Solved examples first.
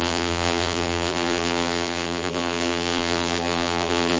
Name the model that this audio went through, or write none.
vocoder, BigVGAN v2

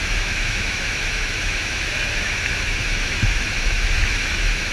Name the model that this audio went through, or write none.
autoencoder, DAC-VAE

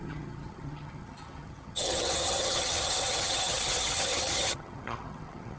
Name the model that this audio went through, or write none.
vocoder, HiFi-GAN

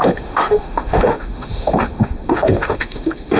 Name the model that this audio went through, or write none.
autoencoder, DAC-VAE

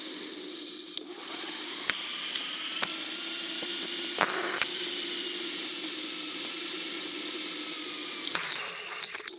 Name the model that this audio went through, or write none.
none